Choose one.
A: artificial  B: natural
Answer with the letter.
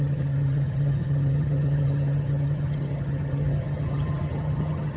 A